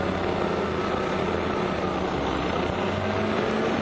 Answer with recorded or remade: recorded